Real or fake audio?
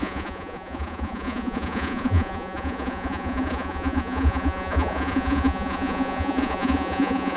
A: fake